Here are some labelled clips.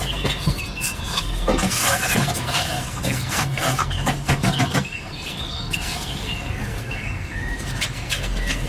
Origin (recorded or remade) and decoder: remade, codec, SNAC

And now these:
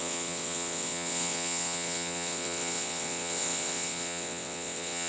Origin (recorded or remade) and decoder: remade, vocoder, WaveNeXt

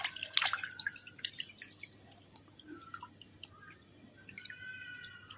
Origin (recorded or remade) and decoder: recorded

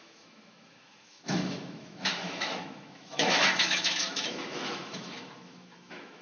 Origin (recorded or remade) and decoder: remade, autoencoder, DAC-VAE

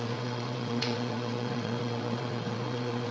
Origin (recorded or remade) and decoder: remade, vocoder, WaveNeXt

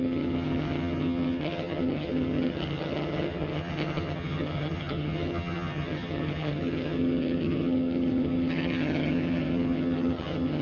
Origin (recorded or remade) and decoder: remade, vocoder, HiFi-GAN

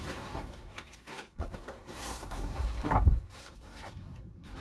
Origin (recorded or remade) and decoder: remade, codec, SNAC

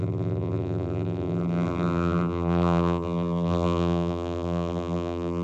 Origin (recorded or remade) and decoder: remade, vocoder, BigVGAN v2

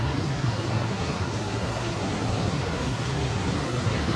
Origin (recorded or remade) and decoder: remade, codec, SNAC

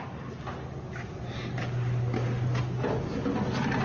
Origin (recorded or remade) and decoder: recorded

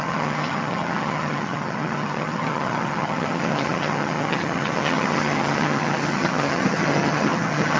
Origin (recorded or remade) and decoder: remade, vocoder, HiFi-GAN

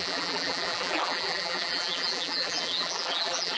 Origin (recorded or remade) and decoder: remade, vocoder, BigVGAN v2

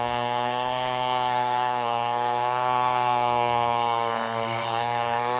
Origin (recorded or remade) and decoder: remade, codec, SNAC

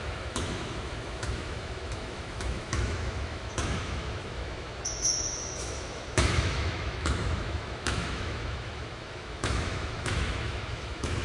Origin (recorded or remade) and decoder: remade, autoencoder, DAC-VAE